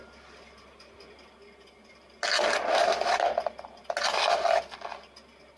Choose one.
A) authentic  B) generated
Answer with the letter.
A